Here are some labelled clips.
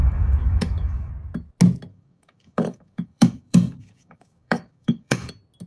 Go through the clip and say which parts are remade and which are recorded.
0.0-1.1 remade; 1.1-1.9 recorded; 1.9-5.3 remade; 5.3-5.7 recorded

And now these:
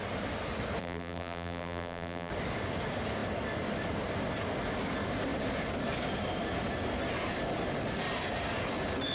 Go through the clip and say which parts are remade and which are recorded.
0.0-0.8 recorded; 0.8-2.3 remade; 2.3-9.1 recorded

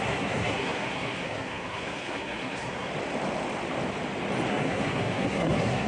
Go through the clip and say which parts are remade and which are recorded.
0.0-2.9 remade; 2.9-4.5 recorded; 4.5-5.9 remade

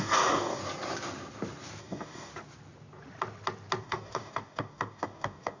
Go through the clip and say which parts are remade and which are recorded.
0.0-0.6 remade; 0.6-1.8 recorded; 1.8-2.3 remade; 2.3-3.8 recorded; 3.8-5.6 remade

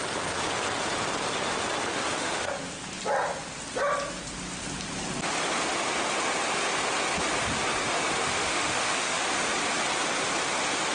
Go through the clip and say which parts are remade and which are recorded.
0.0-1.9 recorded; 1.9-2.5 remade; 2.5-8.2 recorded; 8.2-9.2 remade; 9.2-10.9 recorded

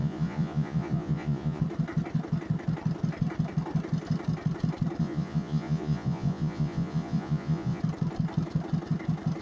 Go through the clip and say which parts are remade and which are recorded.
0.0-1.6 remade; 1.6-5.0 recorded; 5.0-7.8 remade; 7.8-9.4 recorded

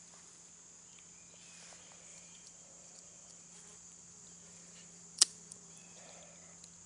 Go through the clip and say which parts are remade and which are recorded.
0.0-2.1 recorded; 2.1-6.2 remade; 6.2-6.9 recorded